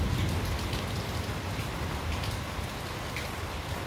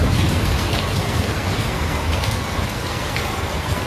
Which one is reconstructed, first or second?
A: second